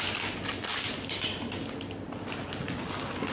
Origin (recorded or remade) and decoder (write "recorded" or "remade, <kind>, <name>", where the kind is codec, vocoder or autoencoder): recorded